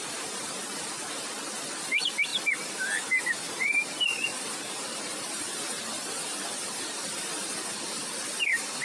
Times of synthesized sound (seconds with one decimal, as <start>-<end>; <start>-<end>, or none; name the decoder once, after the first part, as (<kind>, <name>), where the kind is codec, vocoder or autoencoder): 2.3-7.4 (vocoder, BigVGAN v2)